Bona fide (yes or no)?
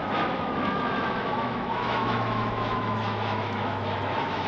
no